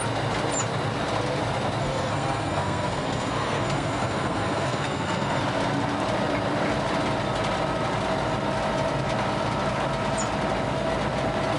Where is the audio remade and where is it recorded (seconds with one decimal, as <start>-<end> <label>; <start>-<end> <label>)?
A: 0.0-1.8 recorded; 1.8-5.4 remade; 5.4-11.6 recorded